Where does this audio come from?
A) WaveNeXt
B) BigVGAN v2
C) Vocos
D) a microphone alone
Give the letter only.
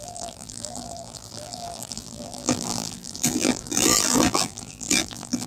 B